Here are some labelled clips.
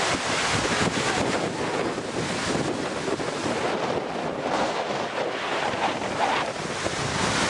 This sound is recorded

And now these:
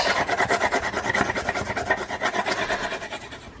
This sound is recorded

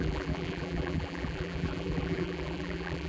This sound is remade